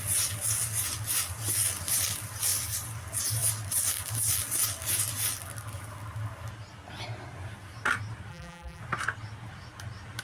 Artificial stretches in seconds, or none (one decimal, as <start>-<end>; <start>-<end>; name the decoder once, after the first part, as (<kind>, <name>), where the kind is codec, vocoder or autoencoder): 8.3-8.8 (vocoder, BigVGAN v2)

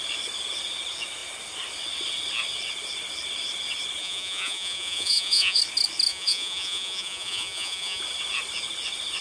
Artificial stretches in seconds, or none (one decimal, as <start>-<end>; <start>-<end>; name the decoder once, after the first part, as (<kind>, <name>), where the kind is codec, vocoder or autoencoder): 4.0-5.6 (vocoder, Vocos); 6.1-8.0

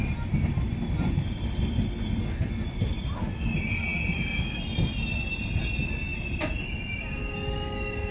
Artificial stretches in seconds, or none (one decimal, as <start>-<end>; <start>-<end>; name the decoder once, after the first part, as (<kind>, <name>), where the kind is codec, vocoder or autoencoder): none

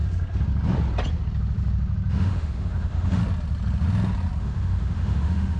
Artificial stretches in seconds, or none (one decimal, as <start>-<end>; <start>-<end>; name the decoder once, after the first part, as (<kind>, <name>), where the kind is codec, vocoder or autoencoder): 2.1-3.2 (autoencoder, DAC-VAE); 4.4-5.6